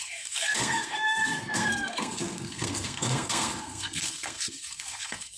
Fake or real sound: fake